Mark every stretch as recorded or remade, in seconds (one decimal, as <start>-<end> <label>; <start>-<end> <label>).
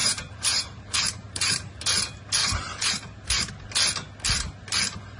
0.0-1.7 remade; 1.7-2.4 recorded; 2.4-3.5 remade; 3.5-5.2 recorded